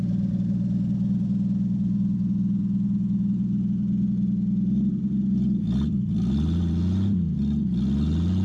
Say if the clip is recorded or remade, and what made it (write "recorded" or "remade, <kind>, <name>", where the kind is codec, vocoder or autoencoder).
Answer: recorded